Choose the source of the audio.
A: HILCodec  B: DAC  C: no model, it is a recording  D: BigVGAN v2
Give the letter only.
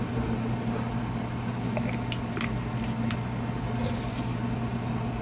C